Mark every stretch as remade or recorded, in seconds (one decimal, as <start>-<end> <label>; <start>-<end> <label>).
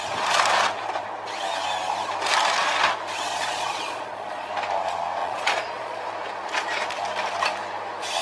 0.0-3.3 recorded; 3.3-4.5 remade; 4.5-5.2 recorded; 5.2-6.0 remade; 6.0-8.2 recorded